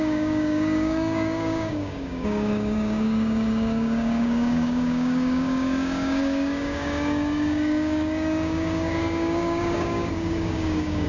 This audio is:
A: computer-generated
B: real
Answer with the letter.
A